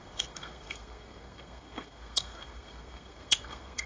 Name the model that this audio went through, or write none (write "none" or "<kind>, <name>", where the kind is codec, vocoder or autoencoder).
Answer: codec, SNAC